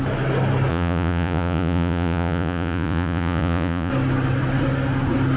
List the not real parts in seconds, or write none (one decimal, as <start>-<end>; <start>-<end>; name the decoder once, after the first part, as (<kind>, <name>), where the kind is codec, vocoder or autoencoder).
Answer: 0.7-3.9 (vocoder, Vocos)